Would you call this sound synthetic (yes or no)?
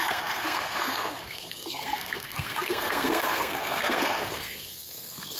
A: yes